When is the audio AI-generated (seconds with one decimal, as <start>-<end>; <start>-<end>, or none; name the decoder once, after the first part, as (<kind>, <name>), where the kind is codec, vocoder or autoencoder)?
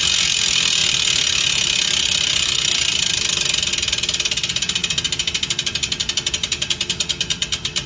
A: none